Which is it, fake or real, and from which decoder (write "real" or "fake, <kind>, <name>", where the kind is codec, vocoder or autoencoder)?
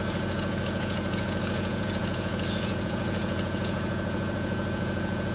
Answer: fake, vocoder, Vocos